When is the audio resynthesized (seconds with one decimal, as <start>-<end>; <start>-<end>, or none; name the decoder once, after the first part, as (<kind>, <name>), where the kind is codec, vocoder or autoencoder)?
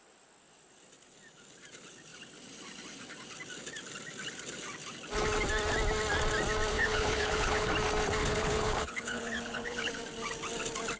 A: 6.7-7.7 (codec, HILCodec); 8.2-9.9